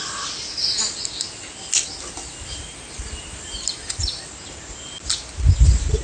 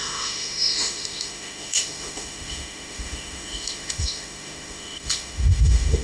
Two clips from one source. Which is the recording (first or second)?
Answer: first